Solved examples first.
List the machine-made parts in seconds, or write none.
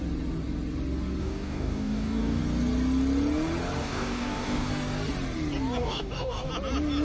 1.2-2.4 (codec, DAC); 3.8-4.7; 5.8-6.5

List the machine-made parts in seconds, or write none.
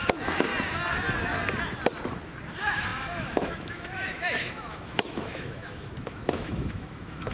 0.0-0.5 (autoencoder, DAC-VAE); 2.5-7.3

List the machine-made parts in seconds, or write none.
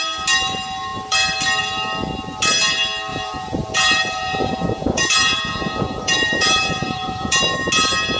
3.1-7.4 (vocoder, Vocos)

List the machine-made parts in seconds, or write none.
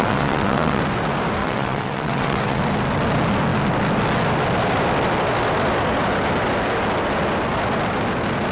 0.0-0.8 (vocoder, WaveNeXt); 1.4-2.6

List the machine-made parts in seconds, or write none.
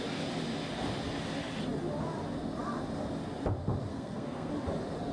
3.9-4.5 (codec, SNAC)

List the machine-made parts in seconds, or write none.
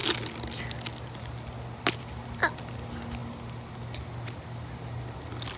none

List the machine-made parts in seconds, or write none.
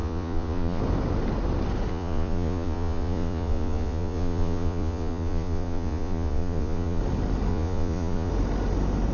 0.0-0.8 (vocoder, Vocos); 1.9-7.0; 7.5-8.3